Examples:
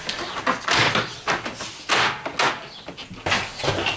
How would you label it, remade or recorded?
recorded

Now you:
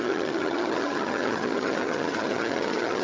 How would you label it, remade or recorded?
remade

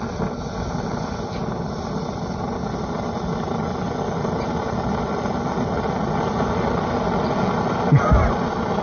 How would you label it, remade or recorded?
recorded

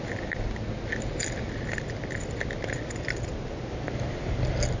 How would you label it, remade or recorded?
recorded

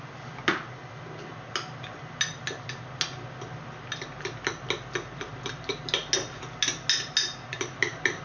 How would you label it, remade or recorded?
recorded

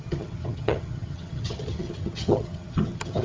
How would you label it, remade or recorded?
remade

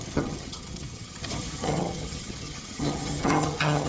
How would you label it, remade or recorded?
remade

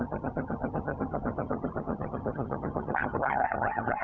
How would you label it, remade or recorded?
remade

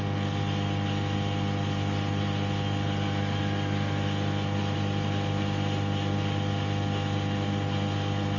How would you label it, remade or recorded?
recorded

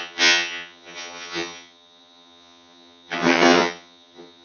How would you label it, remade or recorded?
remade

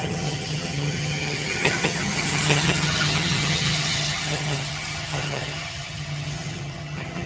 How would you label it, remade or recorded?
remade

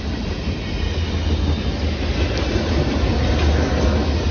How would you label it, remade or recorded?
recorded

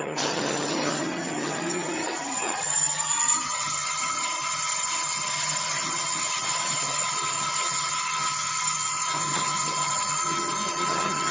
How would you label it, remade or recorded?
remade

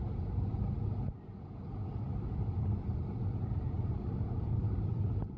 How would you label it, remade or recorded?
recorded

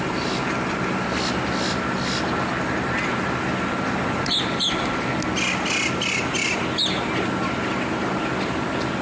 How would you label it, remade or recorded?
recorded